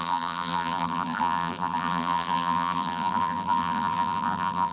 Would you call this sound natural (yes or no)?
no